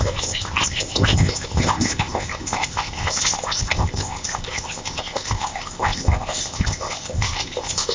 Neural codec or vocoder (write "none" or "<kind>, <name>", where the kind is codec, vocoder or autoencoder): codec, ZipCodec